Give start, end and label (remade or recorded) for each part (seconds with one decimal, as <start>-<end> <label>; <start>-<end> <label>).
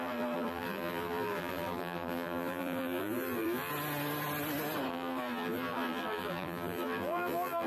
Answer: 0.0-3.7 remade; 3.7-4.9 recorded; 4.9-7.7 remade